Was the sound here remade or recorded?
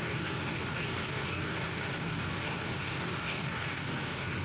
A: remade